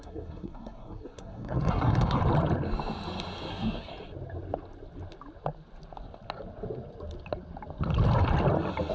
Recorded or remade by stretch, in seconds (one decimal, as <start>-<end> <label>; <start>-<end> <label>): 0.0-2.2 remade; 2.2-3.5 recorded; 3.5-3.9 remade; 3.9-8.9 recorded

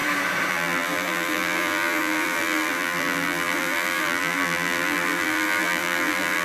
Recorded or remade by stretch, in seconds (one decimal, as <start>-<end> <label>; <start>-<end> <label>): 0.0-0.5 recorded; 0.5-6.4 remade

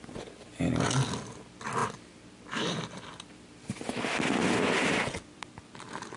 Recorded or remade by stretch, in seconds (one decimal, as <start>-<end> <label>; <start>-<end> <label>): 0.0-6.2 recorded

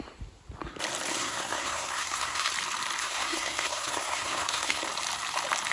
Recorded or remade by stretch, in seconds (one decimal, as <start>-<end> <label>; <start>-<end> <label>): 0.0-1.1 recorded; 1.1-2.5 remade; 2.5-3.0 recorded; 3.0-4.8 remade; 4.8-5.7 recorded

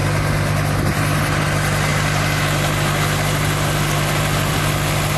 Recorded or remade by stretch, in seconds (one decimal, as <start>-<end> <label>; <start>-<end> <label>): 0.0-5.2 recorded